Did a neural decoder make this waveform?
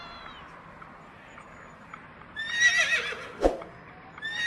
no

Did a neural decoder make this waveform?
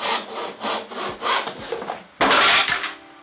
no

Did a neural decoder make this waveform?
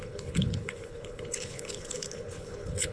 yes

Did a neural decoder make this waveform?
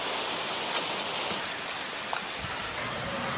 no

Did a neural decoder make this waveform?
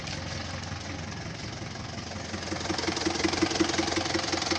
no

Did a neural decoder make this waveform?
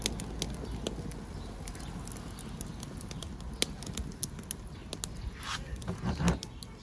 no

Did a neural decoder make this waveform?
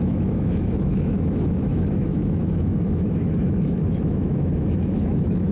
yes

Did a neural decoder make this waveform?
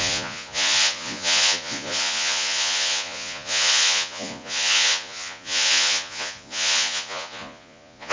yes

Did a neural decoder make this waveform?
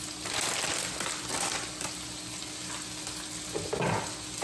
no